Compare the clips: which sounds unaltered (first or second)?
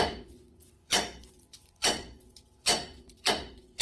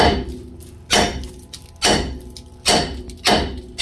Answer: second